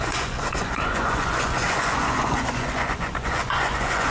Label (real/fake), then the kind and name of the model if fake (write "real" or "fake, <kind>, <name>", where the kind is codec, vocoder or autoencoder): fake, vocoder, Vocos